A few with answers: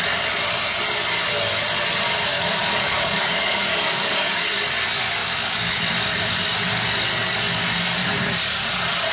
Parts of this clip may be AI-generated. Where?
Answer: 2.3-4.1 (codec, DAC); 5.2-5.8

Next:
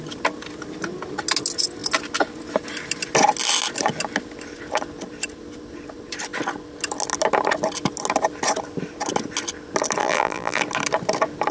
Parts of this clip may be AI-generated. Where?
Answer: 10.0-10.6 (vocoder, BigVGAN v2)

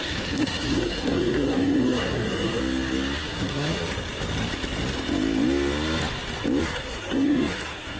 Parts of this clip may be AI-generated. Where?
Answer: 0.0-2.6 (codec, SNAC); 3.2-3.8; 6.6-8.0

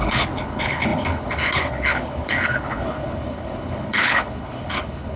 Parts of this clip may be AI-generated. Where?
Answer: 0.0-5.2 (codec, HILCodec)

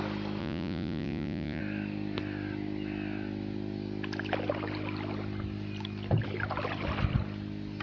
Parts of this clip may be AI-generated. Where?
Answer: 0.4-1.6 (vocoder, Vocos)

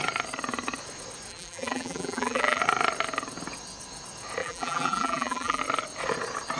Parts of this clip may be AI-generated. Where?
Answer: 1.3-2.6 (vocoder, BigVGAN v2); 4.4-5.6

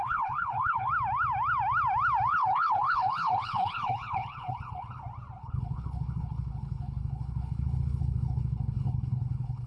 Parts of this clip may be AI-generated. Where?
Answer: 0.0-0.9 (codec, HILCodec); 2.3-5.0; 5.4-9.7

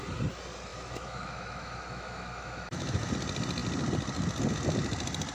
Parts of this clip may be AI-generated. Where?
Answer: 0.7-3.1 (autoencoder, DAC-VAE)